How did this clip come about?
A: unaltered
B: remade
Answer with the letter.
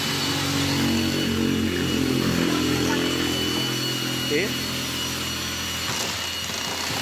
A